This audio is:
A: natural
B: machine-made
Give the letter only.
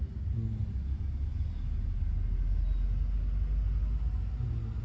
A